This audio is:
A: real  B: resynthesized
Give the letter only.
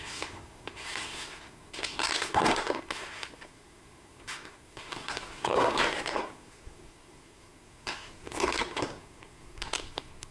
B